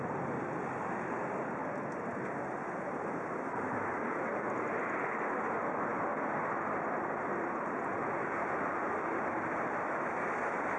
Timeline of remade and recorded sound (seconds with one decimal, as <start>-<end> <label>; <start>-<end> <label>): 0.0-10.8 recorded

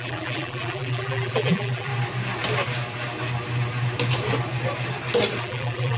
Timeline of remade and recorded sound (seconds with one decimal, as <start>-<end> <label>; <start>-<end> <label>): 0.0-1.9 remade; 1.9-5.4 recorded; 5.4-6.0 remade

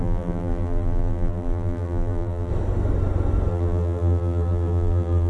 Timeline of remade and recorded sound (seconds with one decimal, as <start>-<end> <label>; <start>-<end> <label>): 0.0-2.5 remade; 2.5-3.5 recorded; 3.5-5.3 remade